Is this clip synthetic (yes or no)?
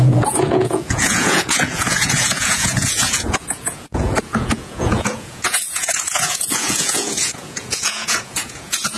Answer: yes